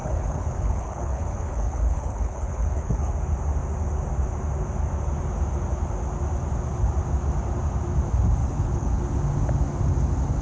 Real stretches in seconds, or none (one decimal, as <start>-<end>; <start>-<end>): 3.1-8.4; 9.0-10.4